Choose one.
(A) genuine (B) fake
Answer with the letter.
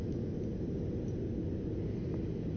A